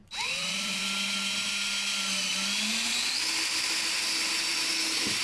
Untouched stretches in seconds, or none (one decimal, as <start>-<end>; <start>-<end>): 0.8-5.2